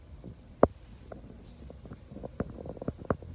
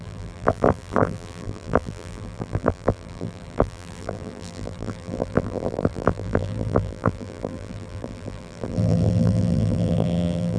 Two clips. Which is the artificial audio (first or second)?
second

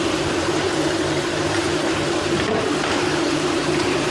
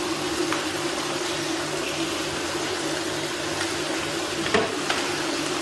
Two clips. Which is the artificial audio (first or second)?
first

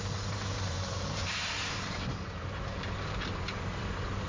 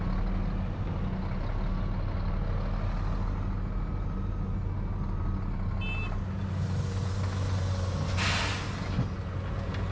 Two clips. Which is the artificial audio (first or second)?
first